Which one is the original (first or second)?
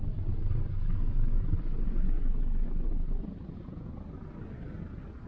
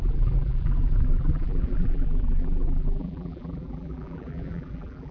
first